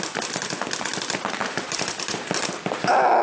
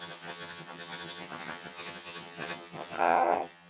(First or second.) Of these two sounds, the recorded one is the first